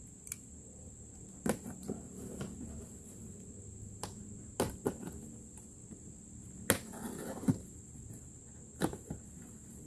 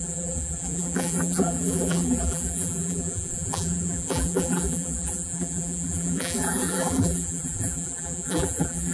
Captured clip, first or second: first